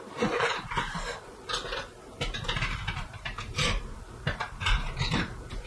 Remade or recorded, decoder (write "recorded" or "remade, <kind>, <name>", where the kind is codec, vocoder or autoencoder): remade, vocoder, BigVGAN v2